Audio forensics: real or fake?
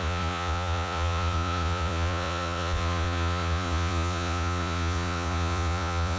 fake